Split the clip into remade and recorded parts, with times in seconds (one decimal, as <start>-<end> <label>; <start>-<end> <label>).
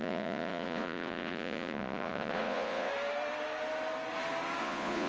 0.0-2.9 remade; 2.9-4.6 recorded; 4.6-5.1 remade